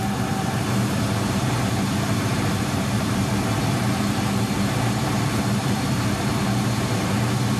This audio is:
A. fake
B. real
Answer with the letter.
A